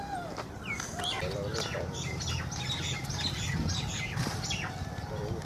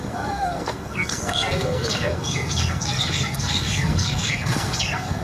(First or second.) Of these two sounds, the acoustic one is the first